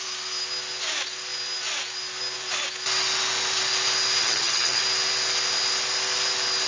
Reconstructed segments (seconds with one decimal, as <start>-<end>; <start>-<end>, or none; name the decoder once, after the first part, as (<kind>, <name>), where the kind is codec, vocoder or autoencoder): 4.2-4.8 (vocoder, HiFi-GAN)